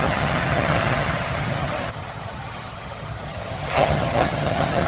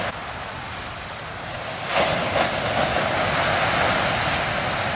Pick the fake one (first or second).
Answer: first